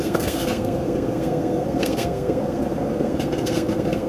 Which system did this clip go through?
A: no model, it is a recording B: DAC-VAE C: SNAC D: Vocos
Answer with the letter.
C